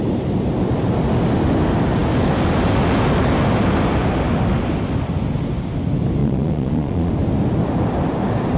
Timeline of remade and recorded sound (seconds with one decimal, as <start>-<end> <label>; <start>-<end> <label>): 0.0-6.2 recorded; 6.2-7.1 remade; 7.1-8.6 recorded